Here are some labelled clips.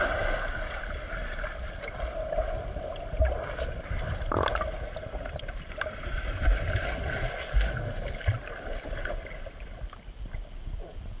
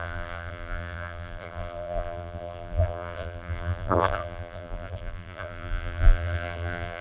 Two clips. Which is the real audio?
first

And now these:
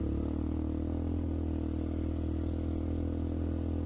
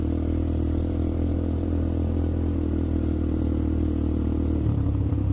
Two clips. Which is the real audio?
first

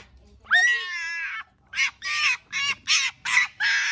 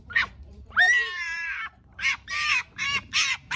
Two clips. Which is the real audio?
first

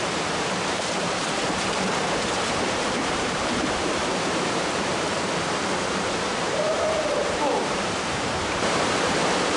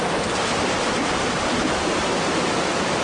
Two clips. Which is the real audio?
second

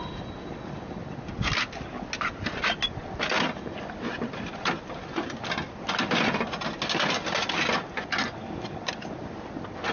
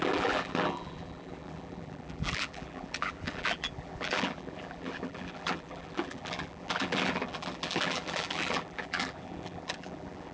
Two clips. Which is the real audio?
first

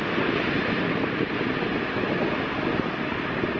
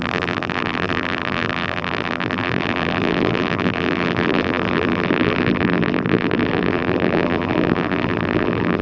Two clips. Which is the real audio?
first